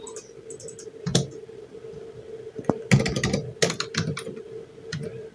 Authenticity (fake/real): real